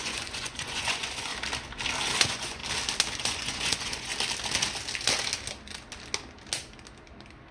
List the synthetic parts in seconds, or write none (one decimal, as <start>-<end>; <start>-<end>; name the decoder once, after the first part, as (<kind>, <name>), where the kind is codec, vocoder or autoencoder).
0.0-1.3 (vocoder, Vocos); 2.2-2.6; 3.2-4.1